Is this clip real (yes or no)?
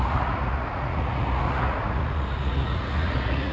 no